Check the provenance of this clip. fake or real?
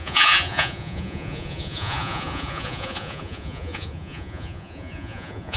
fake